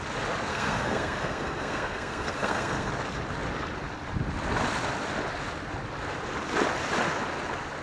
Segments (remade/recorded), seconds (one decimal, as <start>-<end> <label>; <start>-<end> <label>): 0.0-0.5 recorded; 0.5-2.9 remade; 2.9-7.8 recorded